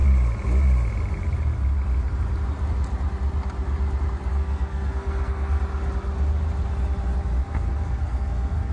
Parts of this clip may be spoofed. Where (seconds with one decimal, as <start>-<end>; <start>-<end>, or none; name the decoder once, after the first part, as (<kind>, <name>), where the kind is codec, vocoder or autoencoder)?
4.3-5.6 (codec, SNAC); 7.4-8.7